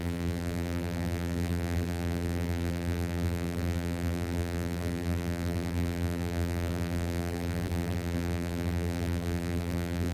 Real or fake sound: fake